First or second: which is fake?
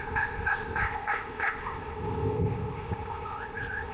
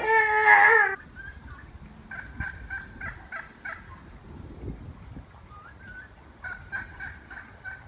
first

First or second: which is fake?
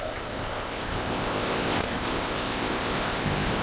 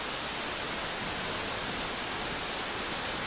first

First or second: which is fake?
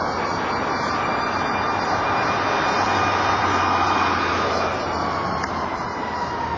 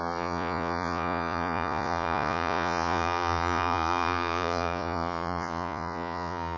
second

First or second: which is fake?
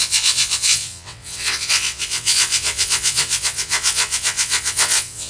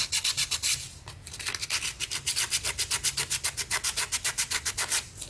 first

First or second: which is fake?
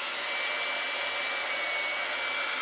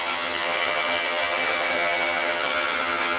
second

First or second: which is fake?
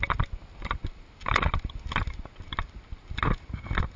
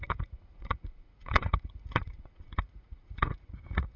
second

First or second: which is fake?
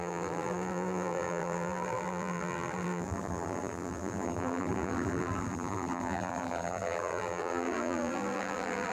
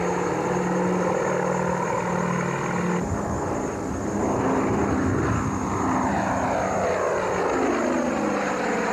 first